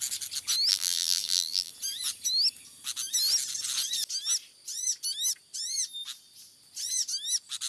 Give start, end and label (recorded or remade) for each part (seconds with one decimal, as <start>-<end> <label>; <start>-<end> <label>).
0.0-0.7 recorded; 0.7-1.7 remade; 1.7-7.7 recorded